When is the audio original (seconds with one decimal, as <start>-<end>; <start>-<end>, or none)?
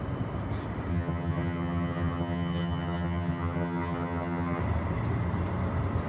0.0-0.9; 4.6-6.1